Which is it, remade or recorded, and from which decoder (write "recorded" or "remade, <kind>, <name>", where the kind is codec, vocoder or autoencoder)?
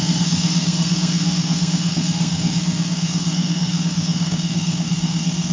remade, codec, SNAC